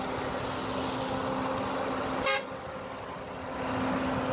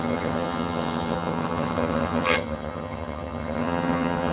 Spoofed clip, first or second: second